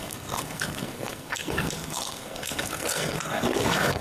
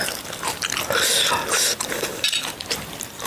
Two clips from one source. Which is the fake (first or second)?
first